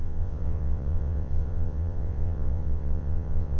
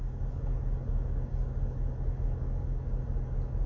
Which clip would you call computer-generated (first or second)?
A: first